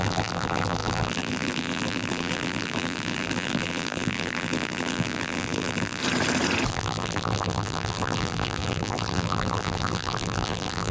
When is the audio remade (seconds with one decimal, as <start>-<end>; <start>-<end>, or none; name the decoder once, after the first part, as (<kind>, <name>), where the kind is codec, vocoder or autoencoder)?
0.0-6.0 (vocoder, BigVGAN v2); 6.7-10.9